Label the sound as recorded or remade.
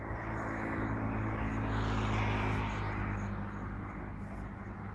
recorded